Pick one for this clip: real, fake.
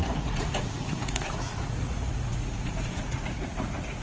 fake